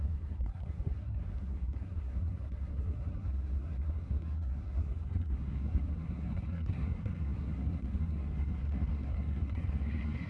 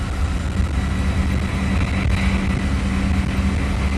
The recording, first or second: second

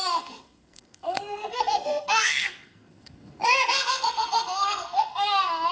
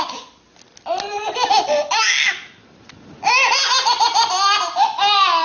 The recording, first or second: second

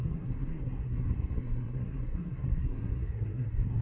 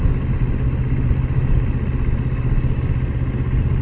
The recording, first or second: second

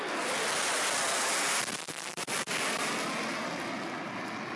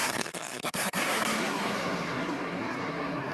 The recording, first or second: first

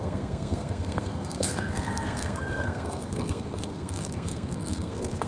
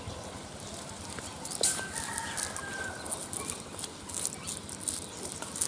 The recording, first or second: second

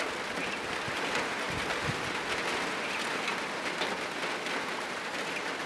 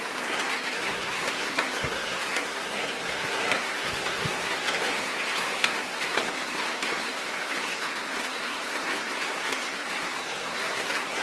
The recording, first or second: first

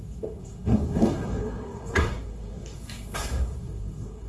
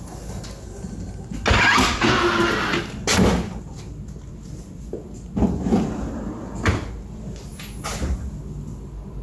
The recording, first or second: second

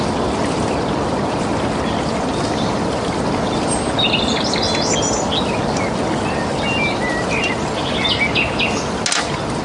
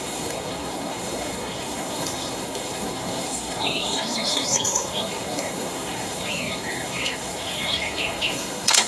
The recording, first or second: first